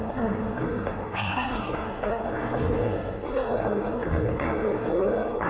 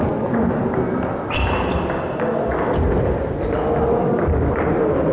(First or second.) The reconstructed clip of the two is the first